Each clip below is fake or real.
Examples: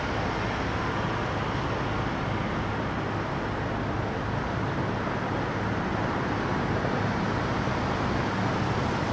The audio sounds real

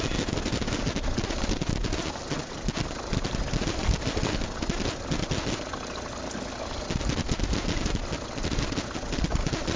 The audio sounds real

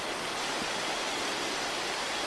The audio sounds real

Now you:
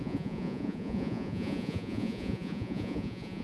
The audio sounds fake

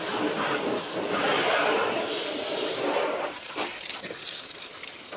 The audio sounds real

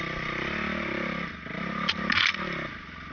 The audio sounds real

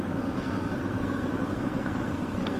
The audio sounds fake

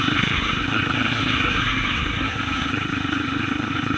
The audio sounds fake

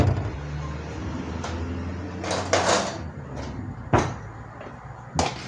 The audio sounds real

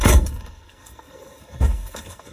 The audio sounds fake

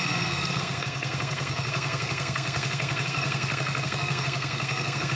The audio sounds fake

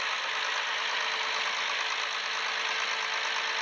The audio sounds real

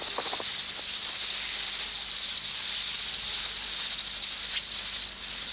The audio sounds real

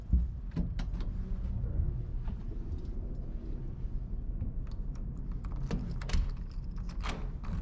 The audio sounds real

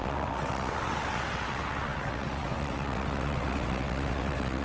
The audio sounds fake